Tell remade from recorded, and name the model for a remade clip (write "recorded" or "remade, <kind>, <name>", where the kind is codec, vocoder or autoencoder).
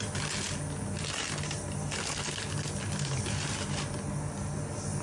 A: recorded